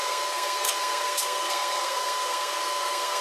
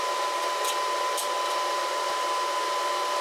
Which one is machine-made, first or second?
first